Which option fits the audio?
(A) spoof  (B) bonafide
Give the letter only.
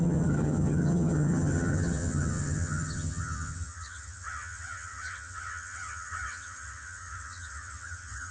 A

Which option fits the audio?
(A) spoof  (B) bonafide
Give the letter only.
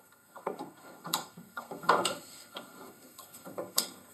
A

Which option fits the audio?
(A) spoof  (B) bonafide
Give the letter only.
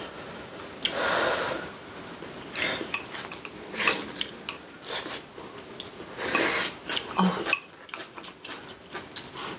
B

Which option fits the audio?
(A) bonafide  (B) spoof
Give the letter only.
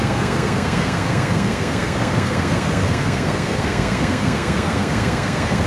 B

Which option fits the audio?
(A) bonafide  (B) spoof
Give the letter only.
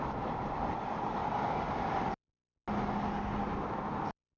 A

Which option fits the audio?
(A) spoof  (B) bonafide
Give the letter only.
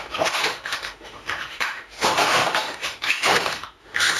A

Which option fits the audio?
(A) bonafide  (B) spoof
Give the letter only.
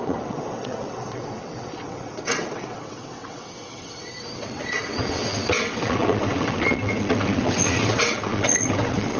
B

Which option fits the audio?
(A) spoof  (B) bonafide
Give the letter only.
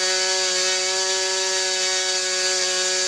B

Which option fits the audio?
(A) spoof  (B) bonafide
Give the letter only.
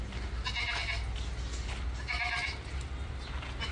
B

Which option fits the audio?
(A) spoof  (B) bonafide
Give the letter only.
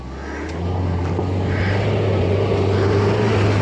B